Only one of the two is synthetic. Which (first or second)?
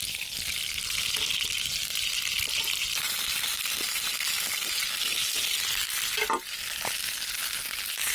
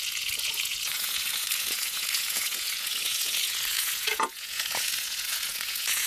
second